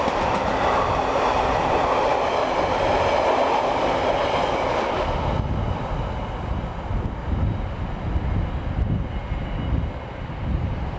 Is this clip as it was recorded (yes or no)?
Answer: yes